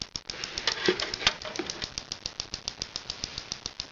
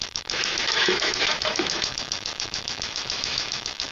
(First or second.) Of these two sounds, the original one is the first